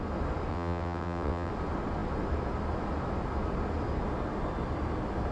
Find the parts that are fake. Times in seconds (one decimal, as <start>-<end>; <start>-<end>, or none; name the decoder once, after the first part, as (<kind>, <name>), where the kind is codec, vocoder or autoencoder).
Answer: 0.5-1.5 (vocoder, WaveNeXt)